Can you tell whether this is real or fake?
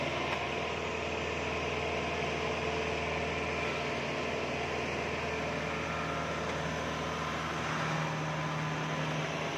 real